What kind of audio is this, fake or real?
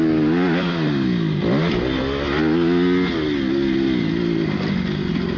real